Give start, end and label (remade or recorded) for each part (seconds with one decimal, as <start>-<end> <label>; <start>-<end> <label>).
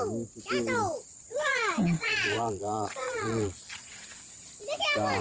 0.0-0.9 recorded; 0.9-4.0 remade; 4.0-5.2 recorded